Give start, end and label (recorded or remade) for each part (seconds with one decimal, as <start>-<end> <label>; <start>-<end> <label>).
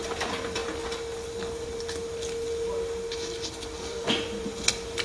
0.0-0.6 remade; 0.6-3.6 recorded; 3.6-5.0 remade